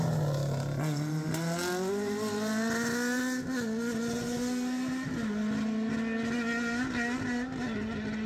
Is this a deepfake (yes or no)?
no